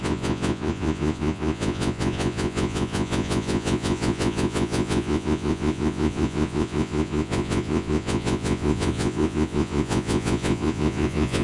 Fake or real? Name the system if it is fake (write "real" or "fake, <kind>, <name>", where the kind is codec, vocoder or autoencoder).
fake, vocoder, Vocos